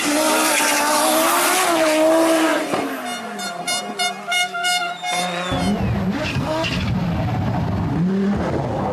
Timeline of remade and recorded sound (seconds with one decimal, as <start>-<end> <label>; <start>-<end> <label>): 0.0-4.3 recorded; 4.3-4.9 remade; 4.9-6.3 recorded; 6.3-6.8 remade; 6.8-8.9 recorded